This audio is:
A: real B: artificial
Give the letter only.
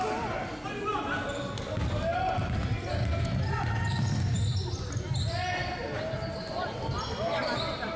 A